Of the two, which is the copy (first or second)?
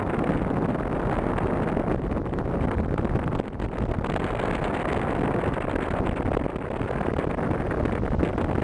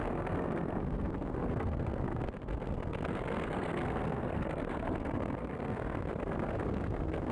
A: second